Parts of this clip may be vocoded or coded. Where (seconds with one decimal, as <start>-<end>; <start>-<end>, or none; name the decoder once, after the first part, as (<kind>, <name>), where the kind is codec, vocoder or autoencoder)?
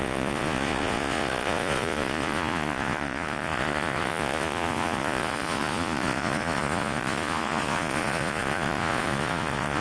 0.0-9.8 (vocoder, Vocos)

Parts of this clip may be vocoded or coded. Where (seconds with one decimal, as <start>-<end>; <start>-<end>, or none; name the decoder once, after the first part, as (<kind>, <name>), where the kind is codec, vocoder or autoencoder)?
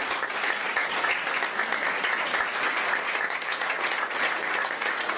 0.0-1.4 (vocoder, Vocos); 1.9-5.2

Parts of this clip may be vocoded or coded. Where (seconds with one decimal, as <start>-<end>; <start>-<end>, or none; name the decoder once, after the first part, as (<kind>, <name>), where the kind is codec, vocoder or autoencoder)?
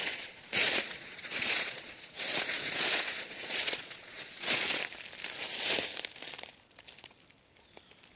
0.0-4.8 (vocoder, Vocos)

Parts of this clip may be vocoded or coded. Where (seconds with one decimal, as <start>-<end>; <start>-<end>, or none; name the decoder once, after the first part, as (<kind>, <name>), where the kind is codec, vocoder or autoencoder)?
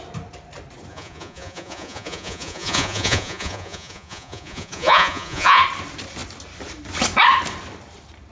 0.9-5.6 (vocoder, Vocos)